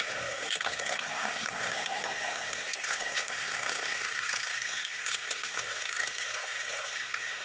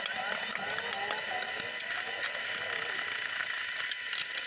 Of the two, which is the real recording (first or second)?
second